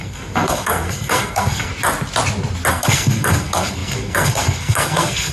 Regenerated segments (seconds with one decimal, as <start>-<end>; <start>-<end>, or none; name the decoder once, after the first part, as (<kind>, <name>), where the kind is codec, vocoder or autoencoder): 0.0-1.7 (codec, SNAC); 2.7-5.3

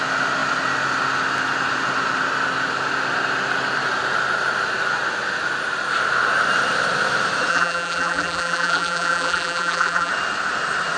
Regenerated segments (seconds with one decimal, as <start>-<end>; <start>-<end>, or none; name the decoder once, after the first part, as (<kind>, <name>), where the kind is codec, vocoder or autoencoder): 7.5-10.1 (vocoder, BigVGAN v2)

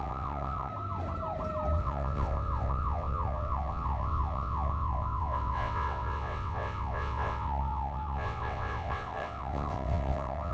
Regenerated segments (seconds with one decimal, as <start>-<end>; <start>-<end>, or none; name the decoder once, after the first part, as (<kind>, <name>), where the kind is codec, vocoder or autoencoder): 0.0-0.7 (vocoder, WaveNeXt); 1.8-10.5

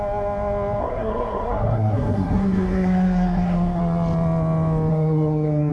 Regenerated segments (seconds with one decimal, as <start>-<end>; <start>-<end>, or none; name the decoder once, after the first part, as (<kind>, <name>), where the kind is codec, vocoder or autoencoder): 0.8-3.8 (codec, SNAC); 4.9-5.7

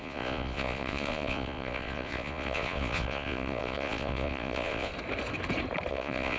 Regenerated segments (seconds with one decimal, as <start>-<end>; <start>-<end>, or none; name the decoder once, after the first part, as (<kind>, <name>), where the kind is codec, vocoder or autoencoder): 0.0-4.9 (vocoder, Vocos); 5.9-6.4

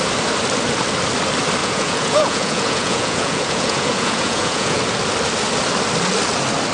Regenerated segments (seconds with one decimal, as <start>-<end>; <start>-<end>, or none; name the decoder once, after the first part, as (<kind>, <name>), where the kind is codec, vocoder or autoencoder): 1.6-4.8 (vocoder, Vocos)

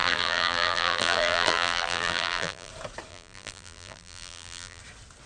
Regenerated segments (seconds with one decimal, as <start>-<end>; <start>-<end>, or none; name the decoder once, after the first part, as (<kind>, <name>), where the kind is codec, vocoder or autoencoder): 0.0-2.7 (vocoder, BigVGAN v2); 3.1-4.8

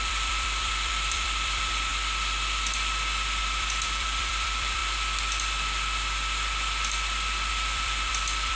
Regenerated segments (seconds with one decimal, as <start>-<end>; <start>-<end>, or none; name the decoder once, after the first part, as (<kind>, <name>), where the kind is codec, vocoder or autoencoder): 0.0-1.9 (vocoder, BigVGAN v2); 3.4-4.8; 7.5-8.6